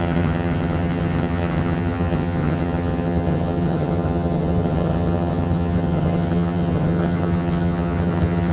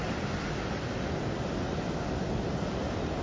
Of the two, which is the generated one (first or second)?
first